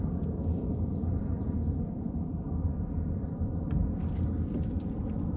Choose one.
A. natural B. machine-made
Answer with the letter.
A